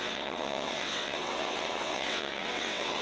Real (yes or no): no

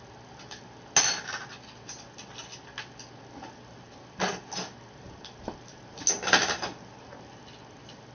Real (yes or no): yes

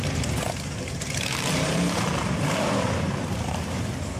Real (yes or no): no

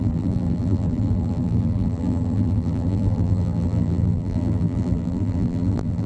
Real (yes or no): no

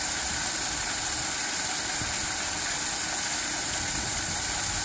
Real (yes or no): yes